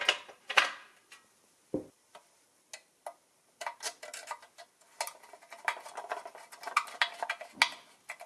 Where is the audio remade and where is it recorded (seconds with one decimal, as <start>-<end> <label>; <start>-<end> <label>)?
0.0-8.3 recorded